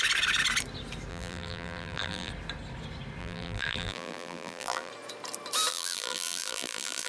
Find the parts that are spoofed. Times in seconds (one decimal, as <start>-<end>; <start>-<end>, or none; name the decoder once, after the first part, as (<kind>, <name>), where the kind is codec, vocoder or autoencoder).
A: 1.1-2.3 (vocoder, BigVGAN v2); 3.2-4.9; 5.7-7.1